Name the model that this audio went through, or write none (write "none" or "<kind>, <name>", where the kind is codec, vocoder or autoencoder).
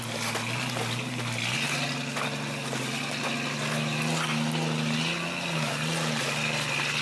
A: none